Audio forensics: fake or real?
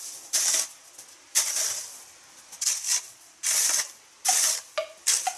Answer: real